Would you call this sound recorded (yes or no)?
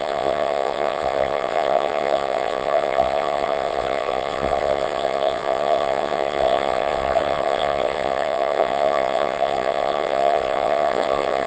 no